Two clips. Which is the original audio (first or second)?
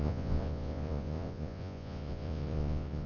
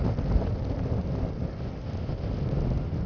second